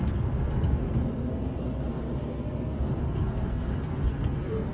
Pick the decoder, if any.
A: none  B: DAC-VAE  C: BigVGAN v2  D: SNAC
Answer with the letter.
D